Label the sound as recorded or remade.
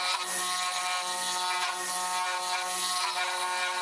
recorded